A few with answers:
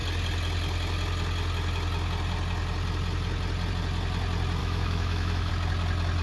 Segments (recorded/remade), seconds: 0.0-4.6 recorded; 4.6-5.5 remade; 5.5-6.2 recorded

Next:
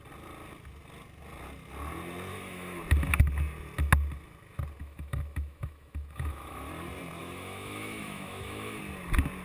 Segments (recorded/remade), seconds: 0.0-2.3 recorded; 2.3-2.8 remade; 2.8-4.8 recorded; 4.8-6.7 remade; 6.7-7.2 recorded; 7.2-8.8 remade; 8.8-9.4 recorded

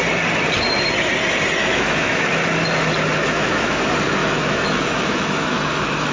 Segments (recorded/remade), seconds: 0.0-1.6 recorded; 1.6-2.3 remade; 2.3-3.2 recorded; 3.2-3.8 remade; 3.8-4.2 recorded; 4.2-6.1 remade

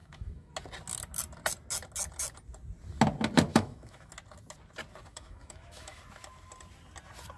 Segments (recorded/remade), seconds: 0.0-0.5 remade; 0.5-3.5 recorded; 3.5-4.1 remade; 4.1-5.1 recorded; 5.1-6.0 remade; 6.0-7.4 recorded

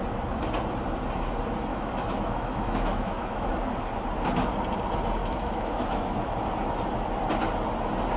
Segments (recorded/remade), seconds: 0.0-1.7 recorded; 1.7-3.5 remade; 3.5-5.2 recorded; 5.2-6.0 remade; 6.0-8.2 recorded

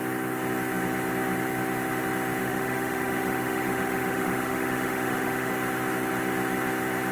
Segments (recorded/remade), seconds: 0.0-2.4 recorded; 2.4-5.5 remade; 5.5-7.1 recorded